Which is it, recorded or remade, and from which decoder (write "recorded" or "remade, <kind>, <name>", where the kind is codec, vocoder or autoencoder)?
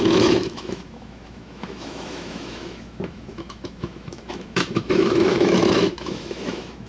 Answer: remade, autoencoder, DAC-VAE